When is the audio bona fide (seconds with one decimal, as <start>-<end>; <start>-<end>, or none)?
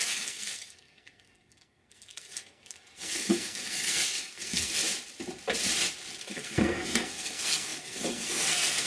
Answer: 4.8-6.2